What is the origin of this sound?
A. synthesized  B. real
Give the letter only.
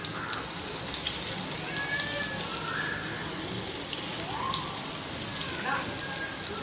B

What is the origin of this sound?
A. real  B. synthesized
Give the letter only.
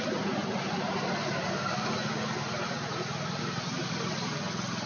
A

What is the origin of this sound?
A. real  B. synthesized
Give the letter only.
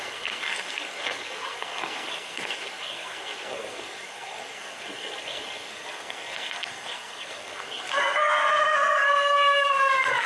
B